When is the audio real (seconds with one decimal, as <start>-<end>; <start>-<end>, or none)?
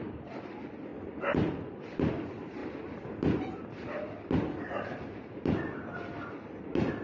0.0-7.0